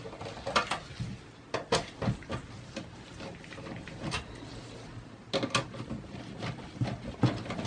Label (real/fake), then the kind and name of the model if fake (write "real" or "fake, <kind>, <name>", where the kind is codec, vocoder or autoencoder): real